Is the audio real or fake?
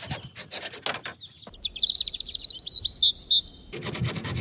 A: real